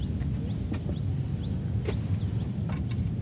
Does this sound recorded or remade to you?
recorded